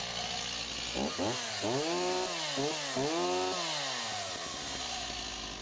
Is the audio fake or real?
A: real